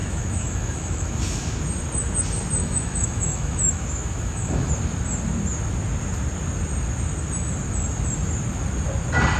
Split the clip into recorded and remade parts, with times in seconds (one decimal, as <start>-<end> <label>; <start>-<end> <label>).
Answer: 0.0-1.6 remade; 1.6-2.6 recorded; 2.6-4.7 remade; 4.7-9.4 recorded